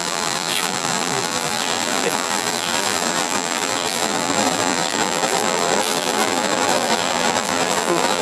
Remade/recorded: remade